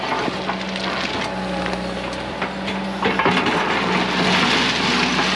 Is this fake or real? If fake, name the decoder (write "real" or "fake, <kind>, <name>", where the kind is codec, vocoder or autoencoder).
real